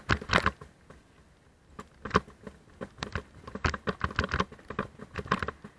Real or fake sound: real